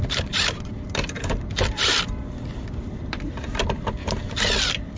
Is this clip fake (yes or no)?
yes